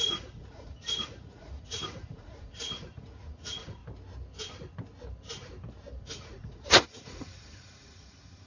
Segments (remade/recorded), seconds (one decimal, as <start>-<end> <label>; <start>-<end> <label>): 0.0-3.8 remade; 3.8-6.0 recorded; 6.0-8.5 remade